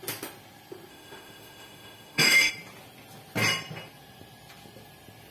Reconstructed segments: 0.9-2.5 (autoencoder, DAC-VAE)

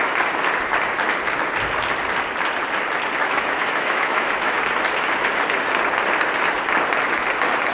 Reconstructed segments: 3.2-4.6 (autoencoder, DAC-VAE)

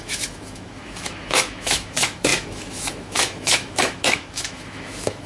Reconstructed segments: 0.0-5.3 (autoencoder, DAC-VAE)

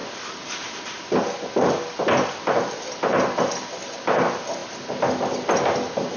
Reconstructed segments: none